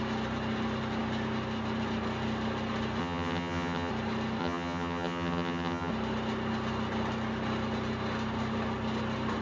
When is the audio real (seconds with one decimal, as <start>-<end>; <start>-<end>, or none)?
0.0-3.0; 3.9-4.4; 5.9-9.4